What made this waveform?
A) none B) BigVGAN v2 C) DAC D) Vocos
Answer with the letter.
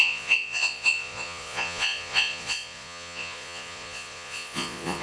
D